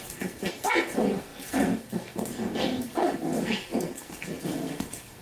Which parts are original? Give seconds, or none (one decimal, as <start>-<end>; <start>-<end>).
none